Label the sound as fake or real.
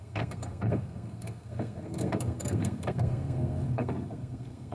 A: fake